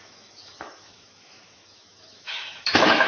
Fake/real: fake